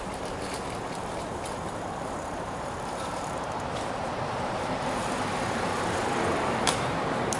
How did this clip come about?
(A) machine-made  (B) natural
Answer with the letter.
A